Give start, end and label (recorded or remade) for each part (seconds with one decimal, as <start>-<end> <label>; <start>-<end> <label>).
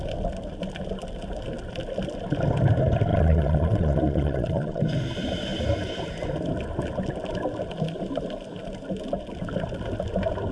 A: 0.0-3.1 recorded; 3.1-4.8 remade; 4.8-10.5 recorded